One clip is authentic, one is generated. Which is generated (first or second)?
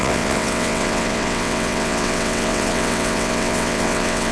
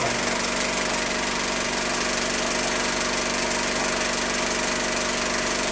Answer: first